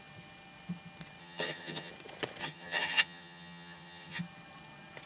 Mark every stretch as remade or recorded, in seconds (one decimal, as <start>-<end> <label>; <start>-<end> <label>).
0.0-1.2 recorded; 1.2-1.9 remade; 1.9-2.4 recorded; 2.4-4.2 remade; 4.2-5.1 recorded